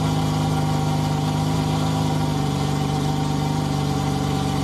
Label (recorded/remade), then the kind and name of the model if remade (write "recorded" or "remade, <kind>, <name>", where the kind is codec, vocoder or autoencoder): recorded